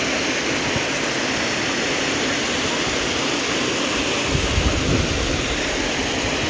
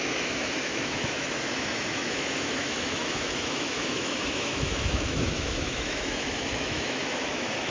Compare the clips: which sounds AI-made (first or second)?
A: second